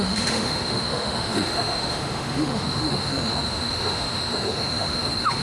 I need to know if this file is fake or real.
fake